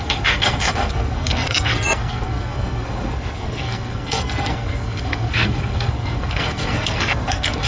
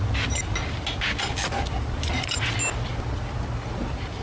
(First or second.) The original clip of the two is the second